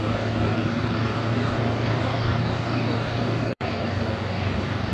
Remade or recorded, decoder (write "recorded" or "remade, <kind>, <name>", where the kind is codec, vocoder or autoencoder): remade, codec, DAC